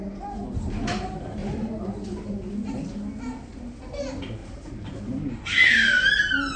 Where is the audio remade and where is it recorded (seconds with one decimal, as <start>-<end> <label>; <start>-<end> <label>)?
0.0-1.4 recorded; 1.4-2.0 remade; 2.0-4.4 recorded; 4.4-5.0 remade; 5.0-6.6 recorded